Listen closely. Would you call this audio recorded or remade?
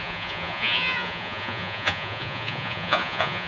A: remade